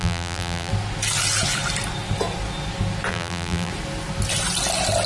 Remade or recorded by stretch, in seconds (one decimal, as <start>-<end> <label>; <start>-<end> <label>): 0.0-0.7 remade; 0.7-3.1 recorded; 3.1-3.7 remade; 3.7-5.1 recorded